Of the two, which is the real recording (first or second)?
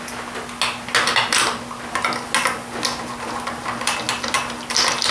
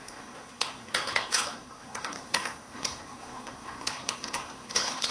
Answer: first